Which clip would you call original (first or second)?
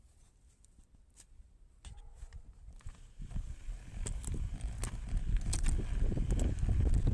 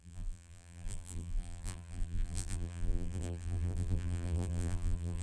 first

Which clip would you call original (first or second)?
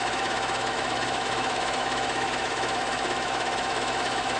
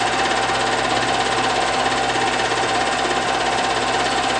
second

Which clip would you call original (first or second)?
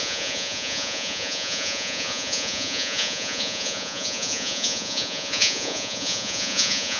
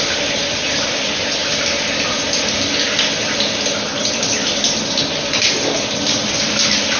second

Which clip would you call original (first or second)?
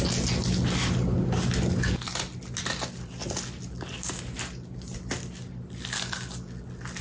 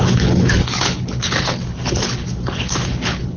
first